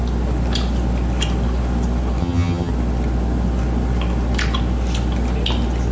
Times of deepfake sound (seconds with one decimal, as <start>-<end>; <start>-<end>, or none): 2.2-2.7